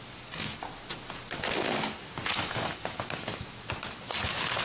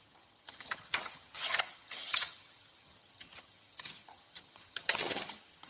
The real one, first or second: first